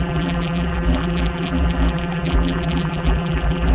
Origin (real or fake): fake